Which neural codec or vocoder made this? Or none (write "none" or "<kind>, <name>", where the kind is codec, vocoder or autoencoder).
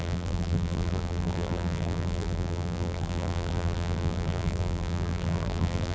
vocoder, BigVGAN v2